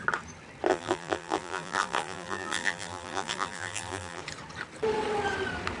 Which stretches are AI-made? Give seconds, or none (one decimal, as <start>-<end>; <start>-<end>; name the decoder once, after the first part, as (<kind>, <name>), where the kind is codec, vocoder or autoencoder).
0.7-4.2 (vocoder, BigVGAN v2)